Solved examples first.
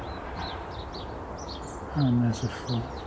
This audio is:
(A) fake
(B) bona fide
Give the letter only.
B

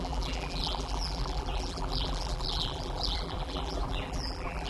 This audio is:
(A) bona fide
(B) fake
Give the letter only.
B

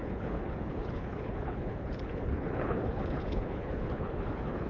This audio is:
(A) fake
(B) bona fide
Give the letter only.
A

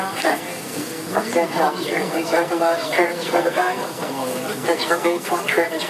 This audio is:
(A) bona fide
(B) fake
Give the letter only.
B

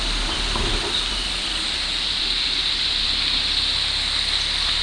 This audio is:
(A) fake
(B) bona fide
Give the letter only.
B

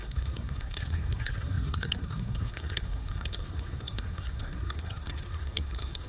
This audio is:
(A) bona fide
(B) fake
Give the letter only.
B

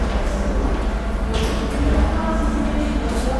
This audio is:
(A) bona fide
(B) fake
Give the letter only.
A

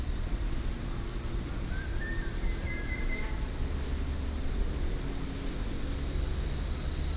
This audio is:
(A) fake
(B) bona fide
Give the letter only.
B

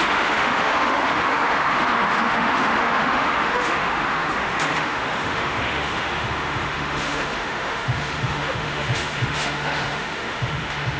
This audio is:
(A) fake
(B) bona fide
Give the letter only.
A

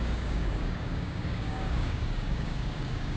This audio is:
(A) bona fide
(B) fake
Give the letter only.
B